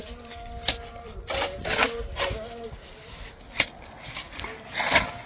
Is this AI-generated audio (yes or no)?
no